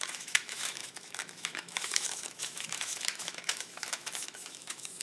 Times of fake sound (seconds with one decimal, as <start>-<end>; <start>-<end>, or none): 0.0-5.0